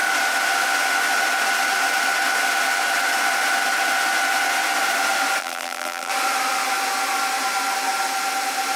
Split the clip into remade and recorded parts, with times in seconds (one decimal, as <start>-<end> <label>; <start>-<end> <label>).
0.0-5.4 recorded; 5.4-6.1 remade; 6.1-8.8 recorded